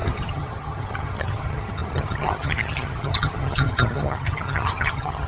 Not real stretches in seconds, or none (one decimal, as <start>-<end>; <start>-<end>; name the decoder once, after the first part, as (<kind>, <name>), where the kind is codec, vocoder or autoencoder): 0.0-5.3 (vocoder, HiFi-GAN)